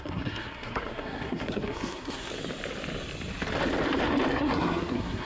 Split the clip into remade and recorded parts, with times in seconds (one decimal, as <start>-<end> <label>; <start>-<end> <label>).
0.0-2.3 remade; 2.3-4.3 recorded; 4.3-5.2 remade

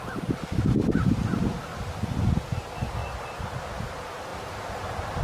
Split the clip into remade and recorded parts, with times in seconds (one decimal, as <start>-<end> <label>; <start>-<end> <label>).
0.0-3.0 recorded; 3.0-3.6 remade; 3.6-4.3 recorded; 4.3-5.2 remade